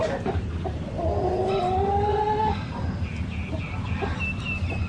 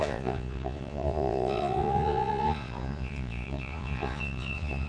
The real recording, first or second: first